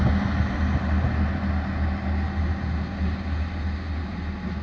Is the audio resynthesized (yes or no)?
no